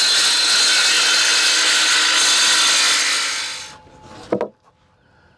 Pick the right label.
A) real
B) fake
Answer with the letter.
A